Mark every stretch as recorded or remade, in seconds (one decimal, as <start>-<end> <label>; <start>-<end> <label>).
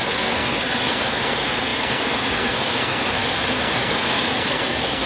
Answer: 0.0-5.1 remade